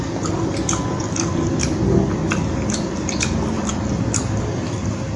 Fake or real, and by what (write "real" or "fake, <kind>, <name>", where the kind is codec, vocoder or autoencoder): real